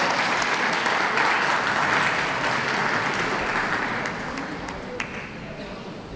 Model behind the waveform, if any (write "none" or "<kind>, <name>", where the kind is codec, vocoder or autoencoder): none